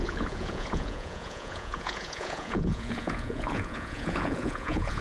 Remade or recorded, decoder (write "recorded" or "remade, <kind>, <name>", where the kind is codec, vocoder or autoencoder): remade, vocoder, Vocos